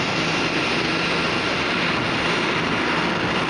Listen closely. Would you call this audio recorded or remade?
recorded